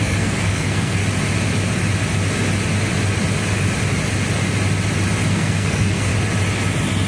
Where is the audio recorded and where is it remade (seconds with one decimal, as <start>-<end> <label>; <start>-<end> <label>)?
0.0-1.0 remade; 1.0-5.3 recorded; 5.3-6.1 remade; 6.1-7.1 recorded